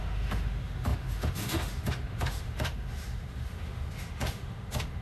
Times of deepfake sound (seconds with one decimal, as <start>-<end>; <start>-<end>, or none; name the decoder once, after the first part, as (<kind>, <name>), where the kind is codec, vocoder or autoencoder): 0.0-5.0 (autoencoder, DAC-VAE)